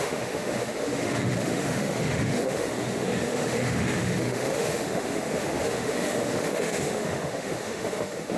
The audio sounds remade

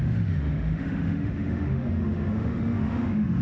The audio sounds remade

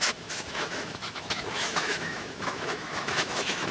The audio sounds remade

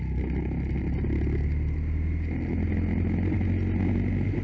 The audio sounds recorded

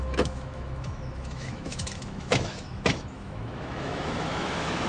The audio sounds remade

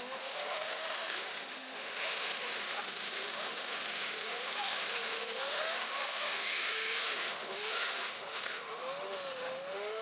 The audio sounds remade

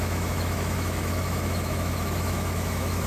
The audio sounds remade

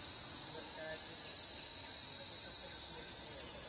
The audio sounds recorded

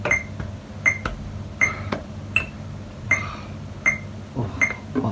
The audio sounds recorded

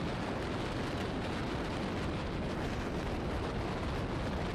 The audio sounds recorded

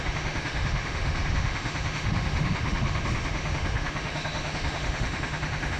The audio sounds remade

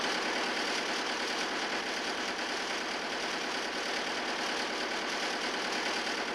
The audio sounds recorded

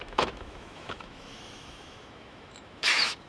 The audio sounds remade